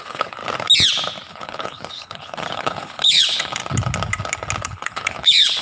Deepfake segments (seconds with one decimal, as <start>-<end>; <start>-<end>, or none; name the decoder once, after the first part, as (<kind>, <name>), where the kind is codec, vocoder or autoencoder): 0.0-0.4 (codec, HILCodec); 1.3-3.6; 4.6-5.6